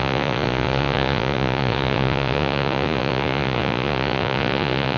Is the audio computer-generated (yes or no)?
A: yes